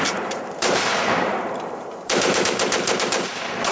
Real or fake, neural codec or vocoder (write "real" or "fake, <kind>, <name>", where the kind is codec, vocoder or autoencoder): fake, vocoder, BigVGAN v2